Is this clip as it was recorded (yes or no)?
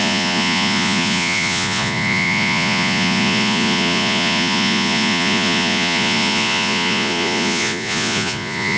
no